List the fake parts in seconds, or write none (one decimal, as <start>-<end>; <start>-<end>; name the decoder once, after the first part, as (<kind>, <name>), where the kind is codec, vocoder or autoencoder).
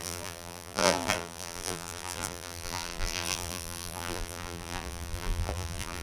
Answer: 0.0-6.0 (vocoder, BigVGAN v2)